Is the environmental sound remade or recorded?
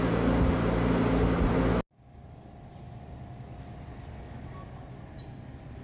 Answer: recorded